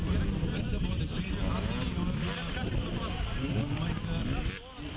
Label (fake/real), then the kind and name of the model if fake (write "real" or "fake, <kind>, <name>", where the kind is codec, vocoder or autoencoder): real